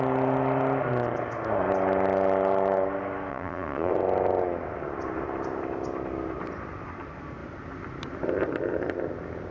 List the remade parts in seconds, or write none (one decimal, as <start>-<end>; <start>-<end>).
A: 3.3-3.9